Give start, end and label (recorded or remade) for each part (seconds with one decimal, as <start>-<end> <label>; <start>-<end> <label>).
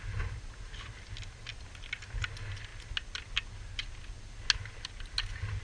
0.0-5.6 recorded